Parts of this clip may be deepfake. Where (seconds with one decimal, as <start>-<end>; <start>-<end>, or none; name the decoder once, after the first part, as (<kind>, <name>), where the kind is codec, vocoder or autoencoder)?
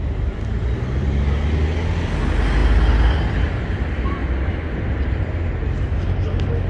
none